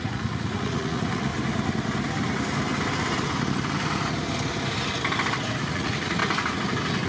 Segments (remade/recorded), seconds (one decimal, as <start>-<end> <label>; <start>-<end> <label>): 0.0-1.3 remade; 1.3-5.6 recorded; 5.6-6.2 remade; 6.2-7.1 recorded